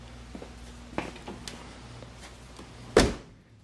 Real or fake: real